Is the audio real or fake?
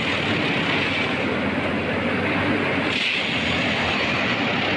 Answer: real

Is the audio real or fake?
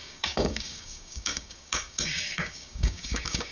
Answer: fake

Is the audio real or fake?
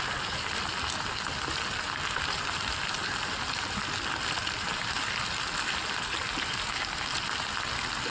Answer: real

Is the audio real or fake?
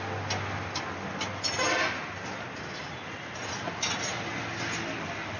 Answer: real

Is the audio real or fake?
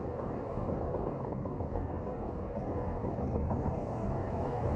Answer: fake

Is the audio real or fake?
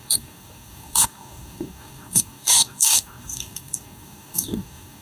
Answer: fake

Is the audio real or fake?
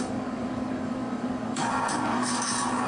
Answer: fake